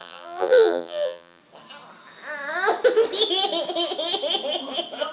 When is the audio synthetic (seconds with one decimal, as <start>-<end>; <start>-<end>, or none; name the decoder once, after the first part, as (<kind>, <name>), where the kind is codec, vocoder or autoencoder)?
0.0-1.4 (vocoder, BigVGAN v2)